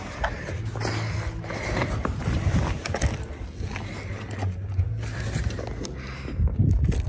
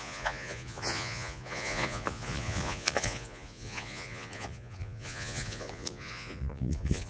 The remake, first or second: second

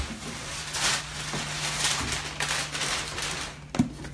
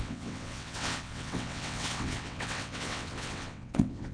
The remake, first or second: second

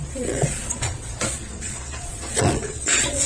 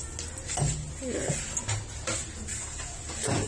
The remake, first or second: first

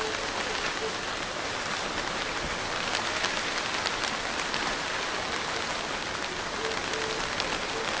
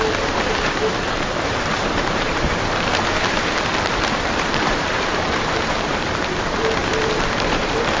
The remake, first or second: second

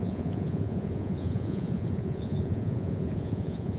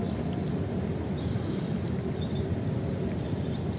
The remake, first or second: first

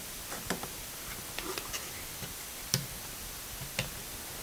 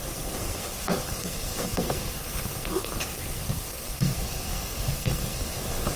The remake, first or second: second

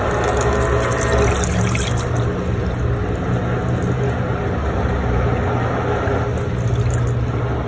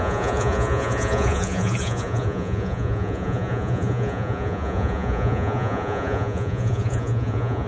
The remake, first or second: second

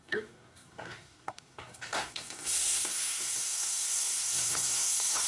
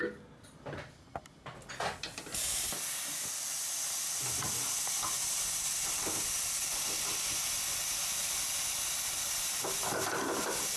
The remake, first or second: first